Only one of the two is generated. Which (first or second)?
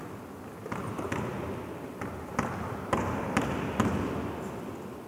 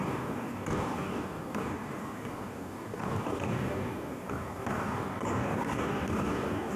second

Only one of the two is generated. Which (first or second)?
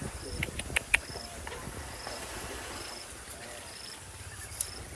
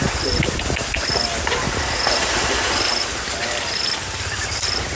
first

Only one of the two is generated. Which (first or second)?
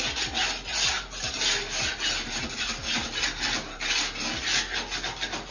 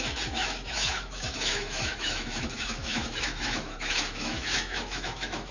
second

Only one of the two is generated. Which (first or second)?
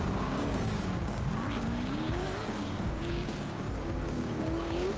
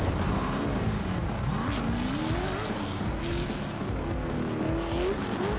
first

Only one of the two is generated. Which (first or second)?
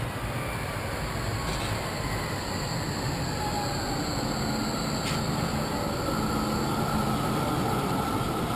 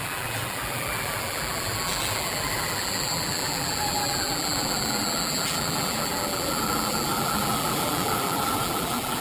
second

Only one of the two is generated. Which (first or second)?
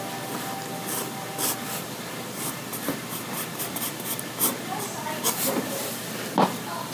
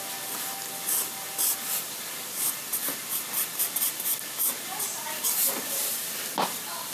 first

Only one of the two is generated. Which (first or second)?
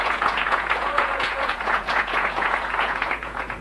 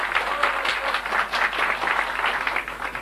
first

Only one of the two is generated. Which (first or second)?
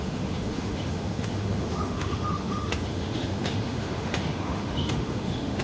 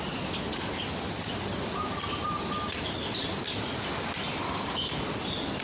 first